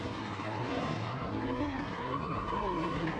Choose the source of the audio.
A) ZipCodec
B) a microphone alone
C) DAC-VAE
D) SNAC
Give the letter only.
D